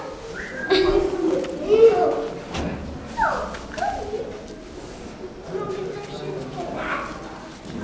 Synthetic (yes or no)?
no